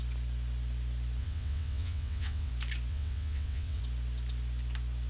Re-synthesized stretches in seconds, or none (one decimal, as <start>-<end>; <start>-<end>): 1.2-2.5; 2.9-3.8